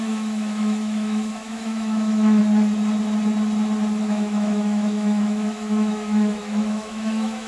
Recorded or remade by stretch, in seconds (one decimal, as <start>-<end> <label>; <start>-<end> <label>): 0.0-2.4 remade; 2.4-4.0 recorded; 4.0-7.5 remade